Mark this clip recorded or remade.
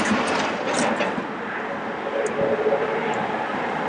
recorded